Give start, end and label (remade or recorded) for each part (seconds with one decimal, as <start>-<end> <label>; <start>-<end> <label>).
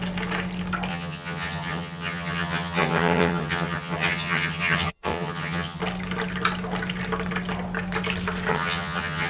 0.0-0.9 recorded; 0.9-5.8 remade; 5.8-8.5 recorded; 8.5-9.3 remade